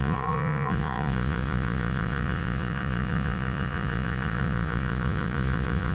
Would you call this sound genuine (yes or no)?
no